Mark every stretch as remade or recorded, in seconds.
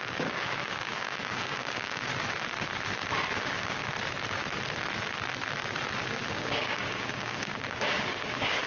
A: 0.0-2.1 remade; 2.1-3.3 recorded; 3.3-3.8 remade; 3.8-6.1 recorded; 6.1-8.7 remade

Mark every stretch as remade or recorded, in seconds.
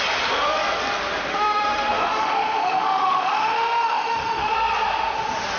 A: 0.0-1.3 recorded; 1.3-4.5 remade; 4.5-5.6 recorded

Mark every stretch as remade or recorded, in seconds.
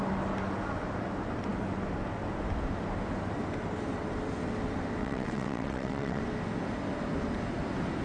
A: 0.0-5.0 recorded; 5.0-6.2 remade; 6.2-8.0 recorded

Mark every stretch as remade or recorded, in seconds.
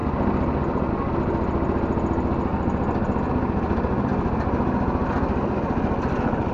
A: 0.0-6.5 recorded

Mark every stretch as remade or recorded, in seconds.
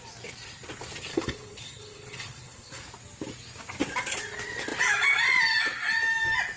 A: 0.0-1.1 recorded; 1.1-2.8 remade; 2.8-6.6 recorded